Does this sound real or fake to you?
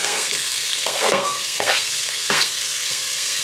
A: fake